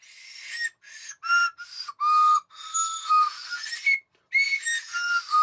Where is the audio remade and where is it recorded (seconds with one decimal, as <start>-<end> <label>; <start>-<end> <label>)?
0.0-5.4 recorded